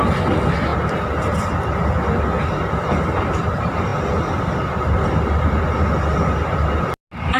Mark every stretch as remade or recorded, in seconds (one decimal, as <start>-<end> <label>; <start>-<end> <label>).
0.0-7.4 recorded